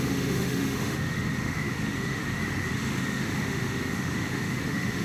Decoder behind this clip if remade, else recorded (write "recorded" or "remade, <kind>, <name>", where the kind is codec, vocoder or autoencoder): remade, autoencoder, DAC-VAE